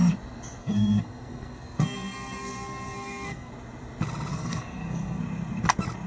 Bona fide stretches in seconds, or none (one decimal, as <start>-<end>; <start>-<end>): 0.0-0.6; 3.5-4.3; 5.2-6.1